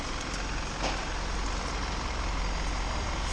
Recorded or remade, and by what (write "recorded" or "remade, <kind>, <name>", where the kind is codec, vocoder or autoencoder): recorded